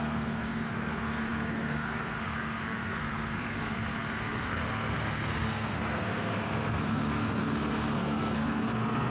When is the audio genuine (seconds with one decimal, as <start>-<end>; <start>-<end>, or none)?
none